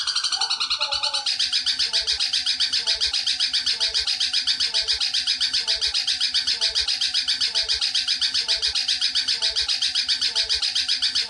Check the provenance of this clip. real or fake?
real